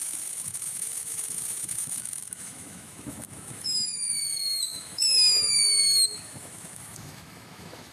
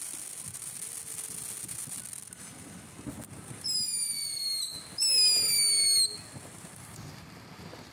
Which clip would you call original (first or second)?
second